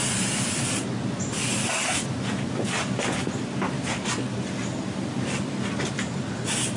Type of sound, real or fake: real